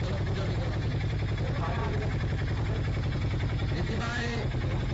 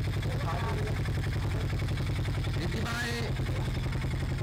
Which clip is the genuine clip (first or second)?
second